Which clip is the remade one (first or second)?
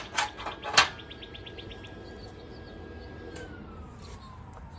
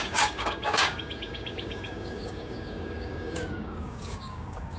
second